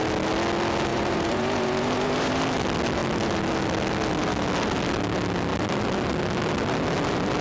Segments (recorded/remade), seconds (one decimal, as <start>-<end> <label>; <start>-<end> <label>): 0.0-0.9 recorded; 0.9-2.4 remade; 2.4-7.4 recorded